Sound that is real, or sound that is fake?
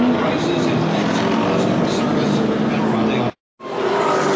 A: real